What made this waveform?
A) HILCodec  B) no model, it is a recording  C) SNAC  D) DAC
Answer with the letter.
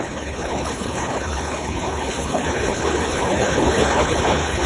A